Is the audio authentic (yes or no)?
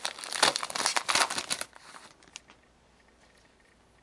yes